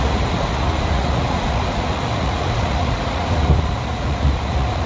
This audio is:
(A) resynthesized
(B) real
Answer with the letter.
A